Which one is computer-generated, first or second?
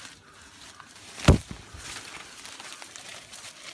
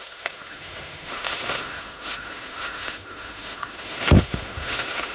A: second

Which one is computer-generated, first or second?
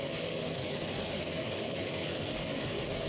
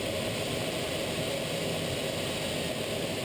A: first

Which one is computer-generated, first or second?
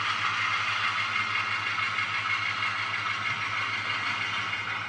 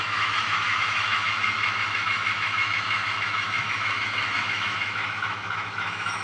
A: second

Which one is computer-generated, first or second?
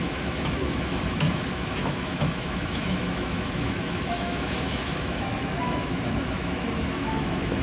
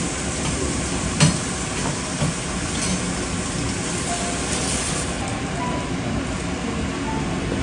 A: first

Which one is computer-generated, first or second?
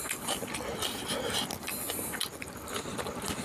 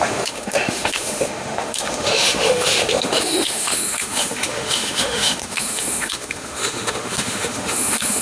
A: second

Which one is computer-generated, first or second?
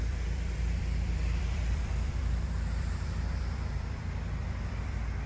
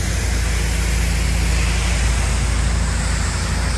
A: first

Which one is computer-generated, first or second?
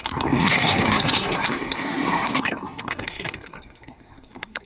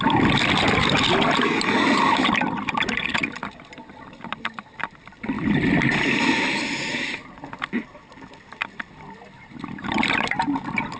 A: first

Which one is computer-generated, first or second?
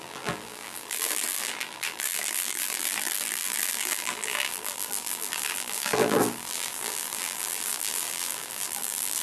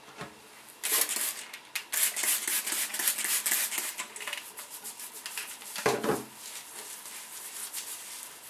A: first